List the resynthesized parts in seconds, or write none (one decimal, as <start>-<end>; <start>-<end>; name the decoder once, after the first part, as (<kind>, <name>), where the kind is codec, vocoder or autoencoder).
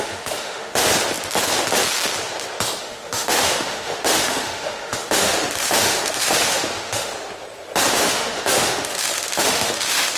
0.0-0.9 (autoencoder, DAC-VAE); 2.8-7.1; 7.9-10.2